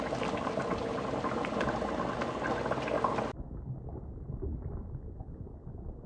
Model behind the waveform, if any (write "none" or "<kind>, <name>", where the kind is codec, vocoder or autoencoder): none